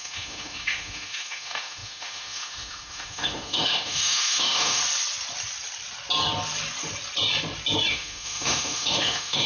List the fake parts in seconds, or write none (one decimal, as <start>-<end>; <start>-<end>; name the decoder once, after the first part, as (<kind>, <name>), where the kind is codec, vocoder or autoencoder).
0.0-4.8 (autoencoder, DAC-VAE); 7.9-9.5